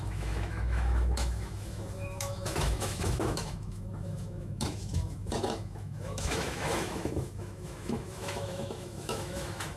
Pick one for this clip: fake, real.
fake